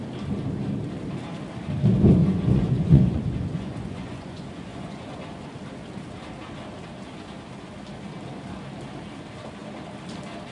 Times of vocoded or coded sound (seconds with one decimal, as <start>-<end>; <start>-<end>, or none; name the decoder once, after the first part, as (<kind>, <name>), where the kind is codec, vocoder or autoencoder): 2.2-5.2 (vocoder, Vocos)